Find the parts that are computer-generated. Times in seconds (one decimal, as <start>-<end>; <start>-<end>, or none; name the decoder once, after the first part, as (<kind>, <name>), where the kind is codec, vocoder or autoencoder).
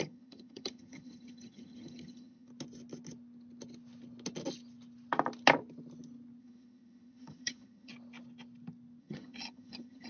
0.0-2.5 (vocoder, HiFi-GAN); 6.4-7.9; 9.0-10.1